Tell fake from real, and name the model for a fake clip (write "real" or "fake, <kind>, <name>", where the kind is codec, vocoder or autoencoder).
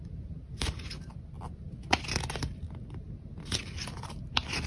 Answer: real